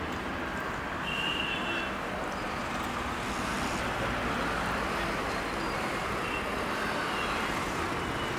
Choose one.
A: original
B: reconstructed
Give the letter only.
A